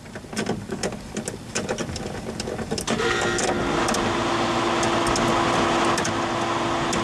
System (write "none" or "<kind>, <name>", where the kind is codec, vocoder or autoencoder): none